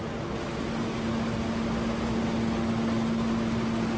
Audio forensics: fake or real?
real